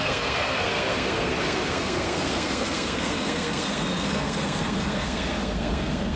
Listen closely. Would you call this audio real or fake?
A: fake